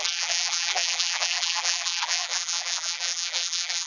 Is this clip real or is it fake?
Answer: fake